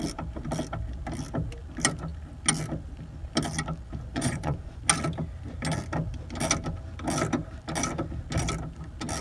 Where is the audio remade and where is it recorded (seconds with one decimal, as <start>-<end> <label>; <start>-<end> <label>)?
0.0-4.1 recorded; 4.1-4.8 remade; 4.8-9.2 recorded